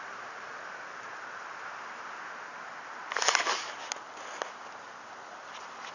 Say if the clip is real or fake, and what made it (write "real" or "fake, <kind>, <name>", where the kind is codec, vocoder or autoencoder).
real